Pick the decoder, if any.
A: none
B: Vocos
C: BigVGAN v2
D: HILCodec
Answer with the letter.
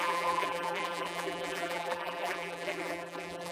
C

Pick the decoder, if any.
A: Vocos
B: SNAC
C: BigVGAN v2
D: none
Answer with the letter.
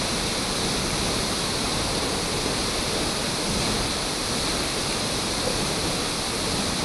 D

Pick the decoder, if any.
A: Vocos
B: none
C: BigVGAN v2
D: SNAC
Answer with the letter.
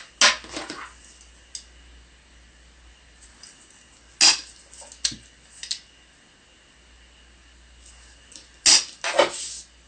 B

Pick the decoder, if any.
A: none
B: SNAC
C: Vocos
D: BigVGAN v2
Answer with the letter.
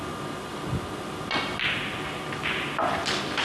A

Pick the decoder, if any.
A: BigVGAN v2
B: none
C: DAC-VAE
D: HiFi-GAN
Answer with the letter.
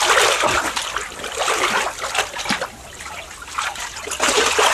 B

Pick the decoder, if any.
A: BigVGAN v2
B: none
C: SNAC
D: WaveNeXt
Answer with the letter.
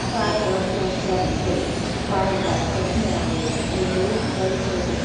B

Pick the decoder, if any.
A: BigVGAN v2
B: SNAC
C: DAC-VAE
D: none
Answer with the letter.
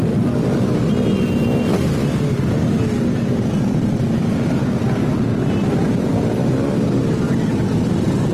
D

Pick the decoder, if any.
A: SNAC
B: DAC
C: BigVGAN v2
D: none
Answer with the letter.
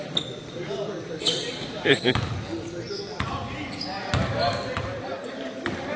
D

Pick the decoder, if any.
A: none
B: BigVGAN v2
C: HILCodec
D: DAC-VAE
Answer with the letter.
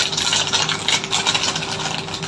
A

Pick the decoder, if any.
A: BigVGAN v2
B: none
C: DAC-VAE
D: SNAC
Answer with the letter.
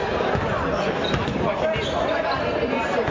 A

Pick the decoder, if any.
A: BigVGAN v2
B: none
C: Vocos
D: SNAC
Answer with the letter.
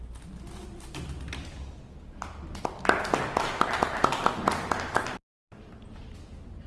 B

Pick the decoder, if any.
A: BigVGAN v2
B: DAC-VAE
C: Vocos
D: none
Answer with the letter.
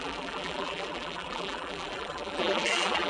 A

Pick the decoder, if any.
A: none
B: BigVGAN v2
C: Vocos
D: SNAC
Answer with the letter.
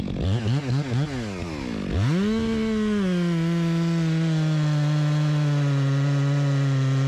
A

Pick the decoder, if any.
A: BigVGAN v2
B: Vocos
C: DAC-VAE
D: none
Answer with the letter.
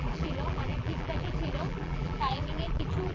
A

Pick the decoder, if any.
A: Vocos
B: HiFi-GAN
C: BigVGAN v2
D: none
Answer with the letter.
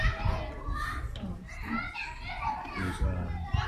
D